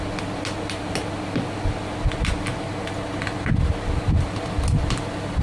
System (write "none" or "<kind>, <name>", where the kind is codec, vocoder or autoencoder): none